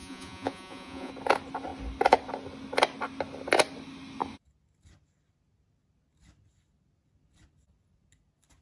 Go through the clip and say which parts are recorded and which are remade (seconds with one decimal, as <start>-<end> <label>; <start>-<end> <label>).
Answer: 0.0-1.1 remade; 1.1-8.6 recorded